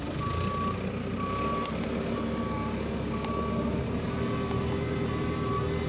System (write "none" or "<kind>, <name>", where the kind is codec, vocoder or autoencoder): none